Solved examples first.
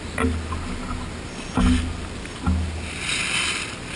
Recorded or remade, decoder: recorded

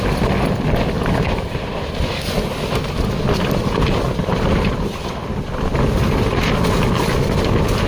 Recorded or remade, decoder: recorded